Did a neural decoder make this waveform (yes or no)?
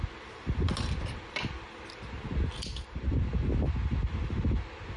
no